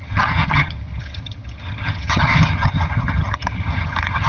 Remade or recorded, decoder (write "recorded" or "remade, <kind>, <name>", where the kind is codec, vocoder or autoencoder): remade, vocoder, HiFi-GAN